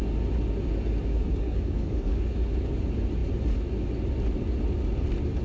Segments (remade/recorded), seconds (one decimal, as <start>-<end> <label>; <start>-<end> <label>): 0.0-1.0 recorded; 1.0-2.3 remade; 2.3-5.4 recorded